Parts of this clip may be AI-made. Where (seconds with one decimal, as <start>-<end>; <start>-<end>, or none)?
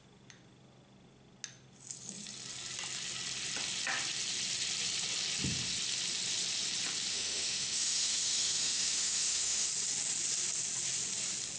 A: 7.1-9.7